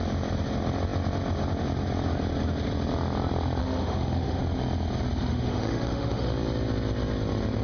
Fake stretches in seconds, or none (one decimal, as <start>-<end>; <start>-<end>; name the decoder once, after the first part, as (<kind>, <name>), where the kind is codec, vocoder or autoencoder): 3.6-4.4 (autoencoder, DAC-VAE); 5.3-6.3